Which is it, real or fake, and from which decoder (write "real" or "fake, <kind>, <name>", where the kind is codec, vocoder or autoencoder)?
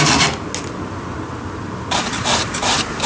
real